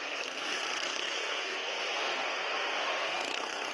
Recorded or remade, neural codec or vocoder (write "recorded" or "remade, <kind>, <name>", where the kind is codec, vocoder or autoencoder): remade, codec, SNAC